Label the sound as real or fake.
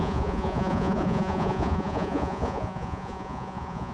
fake